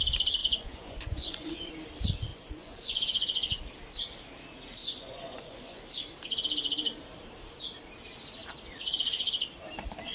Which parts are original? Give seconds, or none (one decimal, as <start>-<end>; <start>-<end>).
0.0-0.4; 1.7-2.3; 3.6-4.8; 5.8-10.1